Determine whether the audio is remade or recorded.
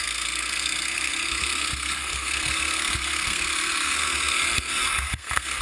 remade